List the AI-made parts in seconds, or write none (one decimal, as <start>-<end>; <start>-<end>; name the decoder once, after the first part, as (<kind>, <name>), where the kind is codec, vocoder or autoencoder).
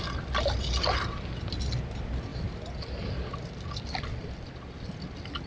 none